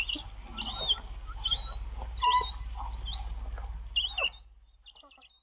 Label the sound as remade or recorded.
recorded